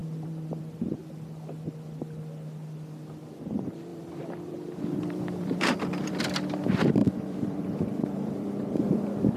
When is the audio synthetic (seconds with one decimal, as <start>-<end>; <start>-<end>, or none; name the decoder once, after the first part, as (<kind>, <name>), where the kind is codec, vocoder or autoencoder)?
0.0-0.6 (vocoder, BigVGAN v2); 3.9-6.2; 7.0-8.8